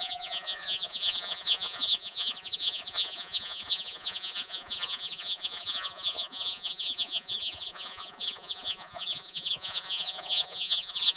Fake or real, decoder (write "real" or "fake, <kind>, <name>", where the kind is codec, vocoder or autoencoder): fake, vocoder, Vocos